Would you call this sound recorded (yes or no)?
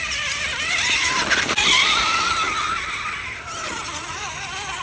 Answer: yes